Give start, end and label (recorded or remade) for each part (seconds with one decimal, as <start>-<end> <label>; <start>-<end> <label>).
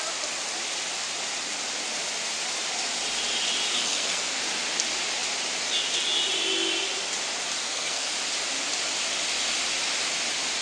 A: 0.0-3.7 recorded; 3.7-4.4 remade; 4.4-7.6 recorded; 7.6-8.1 remade; 8.1-10.6 recorded